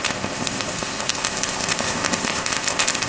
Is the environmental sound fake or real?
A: fake